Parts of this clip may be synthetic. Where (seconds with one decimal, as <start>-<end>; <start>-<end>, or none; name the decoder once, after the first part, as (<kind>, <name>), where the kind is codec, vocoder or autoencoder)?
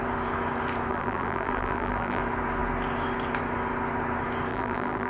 0.9-2.2 (vocoder, BigVGAN v2); 4.5-5.1